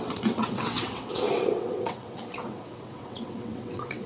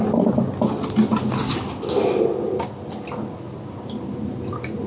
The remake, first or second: first